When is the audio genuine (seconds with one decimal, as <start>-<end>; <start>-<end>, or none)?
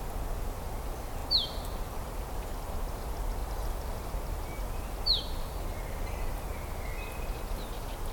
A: 0.0-3.4; 4.1-6.5; 7.4-8.1